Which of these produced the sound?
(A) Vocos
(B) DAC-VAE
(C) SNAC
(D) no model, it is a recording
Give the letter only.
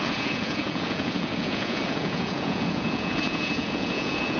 A